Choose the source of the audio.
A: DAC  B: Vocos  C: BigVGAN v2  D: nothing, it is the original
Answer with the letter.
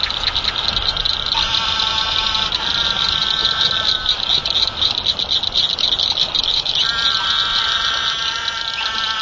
D